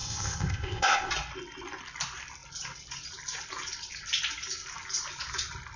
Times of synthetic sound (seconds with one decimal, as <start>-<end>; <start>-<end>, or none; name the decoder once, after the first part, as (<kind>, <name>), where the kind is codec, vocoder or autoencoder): 0.0-1.1 (codec, ZipCodec)